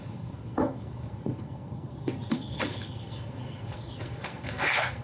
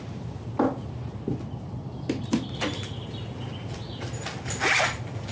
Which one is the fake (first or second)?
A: first